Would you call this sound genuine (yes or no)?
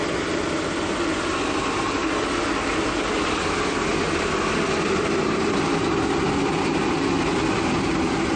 yes